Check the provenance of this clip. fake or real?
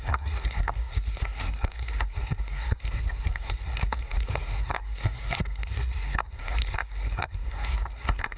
fake